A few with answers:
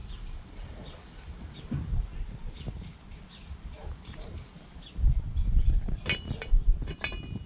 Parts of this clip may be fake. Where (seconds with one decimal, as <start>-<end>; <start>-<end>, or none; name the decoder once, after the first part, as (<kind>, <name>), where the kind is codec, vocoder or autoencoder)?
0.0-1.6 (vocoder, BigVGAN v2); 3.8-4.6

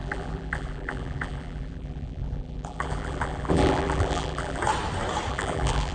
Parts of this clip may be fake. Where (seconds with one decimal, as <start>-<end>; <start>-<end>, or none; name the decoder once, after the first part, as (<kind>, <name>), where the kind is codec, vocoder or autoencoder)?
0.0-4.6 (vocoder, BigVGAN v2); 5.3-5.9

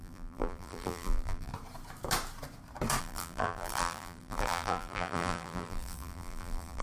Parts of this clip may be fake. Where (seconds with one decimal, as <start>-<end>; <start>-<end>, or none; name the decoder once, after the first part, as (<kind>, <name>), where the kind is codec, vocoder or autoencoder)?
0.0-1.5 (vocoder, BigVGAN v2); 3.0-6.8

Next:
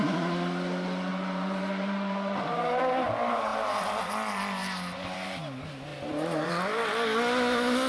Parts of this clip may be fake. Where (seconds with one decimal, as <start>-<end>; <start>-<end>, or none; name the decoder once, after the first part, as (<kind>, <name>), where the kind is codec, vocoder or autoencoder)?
1.1-2.8 (vocoder, BigVGAN v2); 4.6-5.4; 5.9-6.5

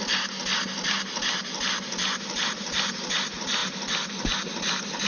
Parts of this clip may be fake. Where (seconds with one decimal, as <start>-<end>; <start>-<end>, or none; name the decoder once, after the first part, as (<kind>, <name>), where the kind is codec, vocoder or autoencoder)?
1.4-2.5 (vocoder, BigVGAN v2); 3.6-5.1

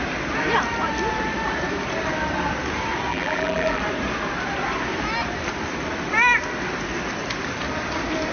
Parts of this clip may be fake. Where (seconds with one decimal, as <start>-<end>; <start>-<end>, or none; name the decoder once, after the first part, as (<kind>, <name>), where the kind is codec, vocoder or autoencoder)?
3.1-3.8 (vocoder, BigVGAN v2)

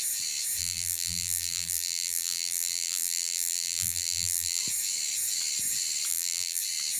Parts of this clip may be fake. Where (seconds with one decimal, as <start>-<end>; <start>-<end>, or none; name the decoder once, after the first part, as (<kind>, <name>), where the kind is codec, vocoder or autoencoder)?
0.6-4.6 (vocoder, BigVGAN v2); 6.1-6.6

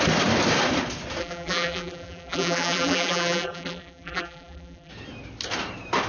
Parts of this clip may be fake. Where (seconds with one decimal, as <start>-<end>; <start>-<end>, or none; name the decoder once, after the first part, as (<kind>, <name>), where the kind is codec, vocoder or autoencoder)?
1.2-4.9 (vocoder, BigVGAN v2)